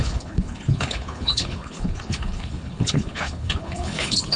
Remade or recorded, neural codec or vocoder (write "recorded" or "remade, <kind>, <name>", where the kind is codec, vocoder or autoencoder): remade, codec, HILCodec